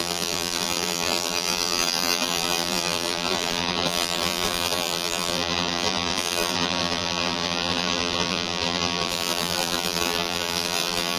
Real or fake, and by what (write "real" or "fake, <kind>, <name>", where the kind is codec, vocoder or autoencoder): fake, vocoder, BigVGAN v2